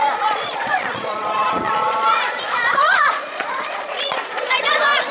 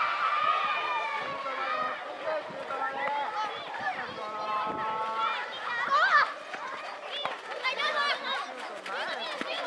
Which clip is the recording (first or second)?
second